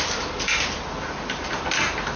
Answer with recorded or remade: recorded